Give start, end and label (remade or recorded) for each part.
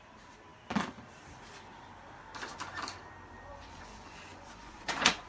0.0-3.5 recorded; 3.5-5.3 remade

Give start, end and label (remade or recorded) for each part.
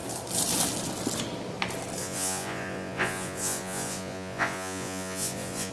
0.0-2.0 recorded; 2.0-5.7 remade